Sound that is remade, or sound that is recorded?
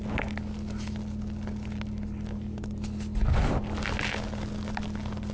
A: recorded